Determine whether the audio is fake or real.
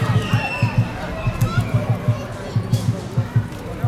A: real